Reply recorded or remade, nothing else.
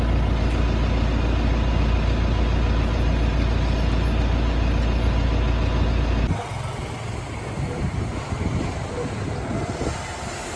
recorded